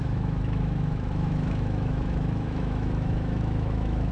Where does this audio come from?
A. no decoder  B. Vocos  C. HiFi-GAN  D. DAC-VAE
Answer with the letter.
D